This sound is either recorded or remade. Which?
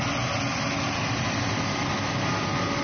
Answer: recorded